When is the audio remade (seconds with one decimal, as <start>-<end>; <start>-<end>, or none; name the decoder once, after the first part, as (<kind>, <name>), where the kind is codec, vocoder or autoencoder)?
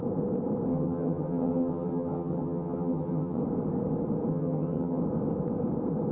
0.7-3.4 (vocoder, HiFi-GAN); 4.3-5.0